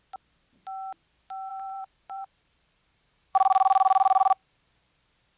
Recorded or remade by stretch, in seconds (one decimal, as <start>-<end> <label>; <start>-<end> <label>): 0.0-1.5 recorded; 1.5-4.7 remade; 4.7-5.4 recorded